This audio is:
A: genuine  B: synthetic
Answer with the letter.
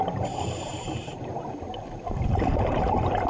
B